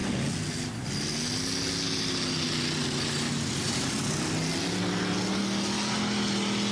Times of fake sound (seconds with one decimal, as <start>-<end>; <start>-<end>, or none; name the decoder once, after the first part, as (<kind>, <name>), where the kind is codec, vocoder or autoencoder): none